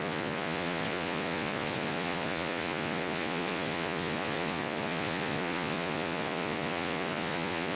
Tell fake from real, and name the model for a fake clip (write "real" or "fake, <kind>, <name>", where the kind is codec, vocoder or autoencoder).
fake, vocoder, Vocos